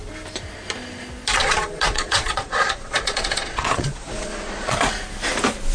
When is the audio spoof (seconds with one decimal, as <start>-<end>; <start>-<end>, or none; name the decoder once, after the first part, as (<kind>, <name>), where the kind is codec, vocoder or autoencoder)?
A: 1.4-4.8 (vocoder, Vocos)